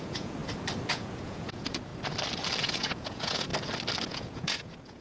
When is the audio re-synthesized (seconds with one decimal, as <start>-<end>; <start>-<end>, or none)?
0.0-0.4; 0.9-1.9; 2.6-3.5; 4.1-5.0